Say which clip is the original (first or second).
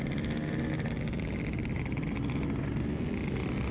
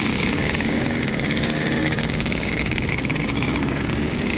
first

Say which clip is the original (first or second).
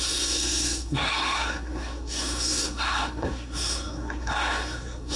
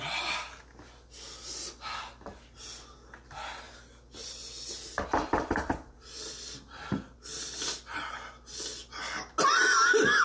second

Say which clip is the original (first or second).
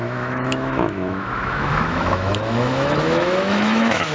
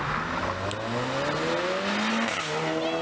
second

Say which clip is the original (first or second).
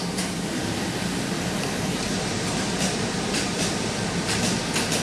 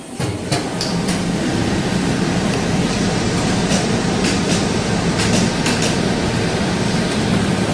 second